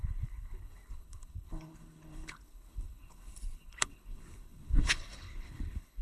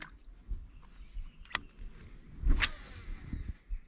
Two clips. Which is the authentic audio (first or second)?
second